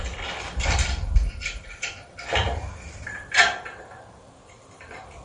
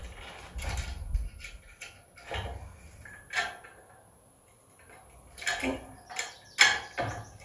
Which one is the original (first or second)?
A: second